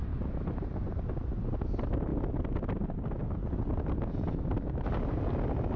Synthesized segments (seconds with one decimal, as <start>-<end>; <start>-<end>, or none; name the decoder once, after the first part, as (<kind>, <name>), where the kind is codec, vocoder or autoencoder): 0.0-1.1 (vocoder, BigVGAN v2)